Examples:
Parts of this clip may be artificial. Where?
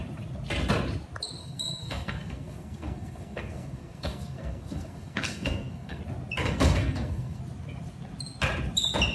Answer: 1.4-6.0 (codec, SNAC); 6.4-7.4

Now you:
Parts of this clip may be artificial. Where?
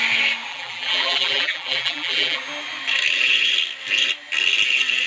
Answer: 0.5-2.4 (vocoder, BigVGAN v2)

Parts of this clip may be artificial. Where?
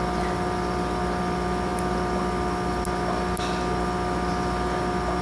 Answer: none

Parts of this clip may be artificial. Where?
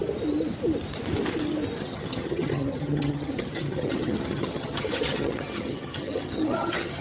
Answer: 1.8-7.0 (vocoder, HiFi-GAN)